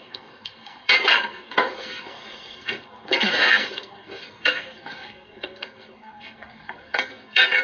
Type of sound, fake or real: fake